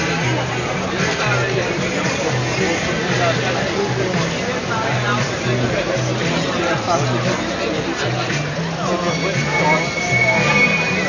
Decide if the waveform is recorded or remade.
recorded